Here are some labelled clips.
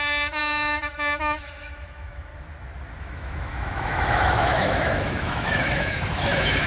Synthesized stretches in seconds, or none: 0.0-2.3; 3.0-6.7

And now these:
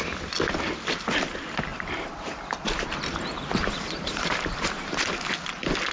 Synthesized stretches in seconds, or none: 1.7-5.2

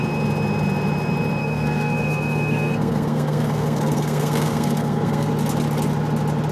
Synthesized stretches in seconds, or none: 1.4-5.3

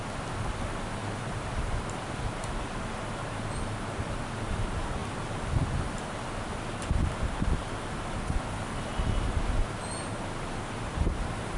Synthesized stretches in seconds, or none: none

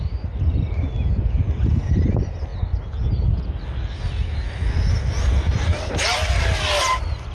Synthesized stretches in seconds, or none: none

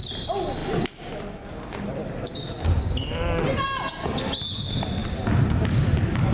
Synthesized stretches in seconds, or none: none

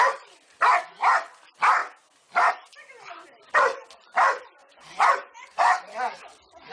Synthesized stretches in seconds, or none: 4.6-5.9

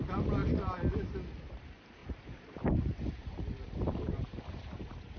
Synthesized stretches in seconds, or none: 2.0-5.2